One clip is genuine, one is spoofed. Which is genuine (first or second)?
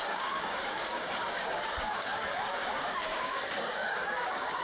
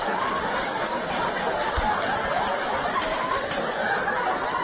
second